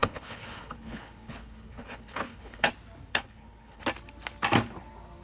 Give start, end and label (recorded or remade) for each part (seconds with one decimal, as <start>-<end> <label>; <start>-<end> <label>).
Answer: 0.0-2.7 remade; 2.7-3.1 recorded; 3.1-3.8 remade; 3.8-5.2 recorded